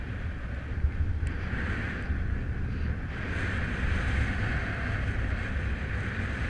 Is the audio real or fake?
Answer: real